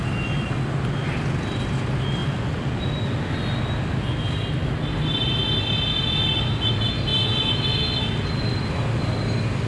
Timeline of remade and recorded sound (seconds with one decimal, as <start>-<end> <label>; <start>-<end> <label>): 0.0-9.7 recorded

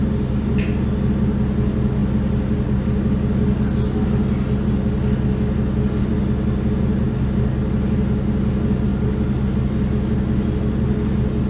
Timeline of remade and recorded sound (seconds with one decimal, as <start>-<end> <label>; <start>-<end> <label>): 0.0-11.5 recorded

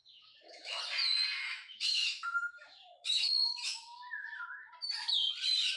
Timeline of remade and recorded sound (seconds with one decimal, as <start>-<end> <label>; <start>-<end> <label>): 0.0-0.8 remade; 0.8-1.4 recorded; 1.4-4.7 remade; 4.7-5.8 recorded

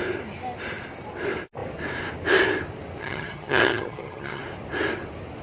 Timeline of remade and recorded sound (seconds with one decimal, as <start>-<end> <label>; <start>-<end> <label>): 0.0-3.0 recorded; 3.0-4.4 remade; 4.4-5.4 recorded

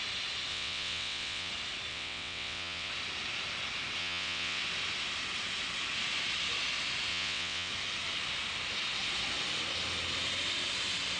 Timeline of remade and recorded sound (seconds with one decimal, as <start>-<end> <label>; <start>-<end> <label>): 0.0-0.5 recorded; 0.5-1.5 remade; 1.5-1.9 recorded; 1.9-2.9 remade; 2.9-4.0 recorded; 4.0-4.6 remade; 4.6-7.1 recorded; 7.1-7.7 remade; 7.7-11.2 recorded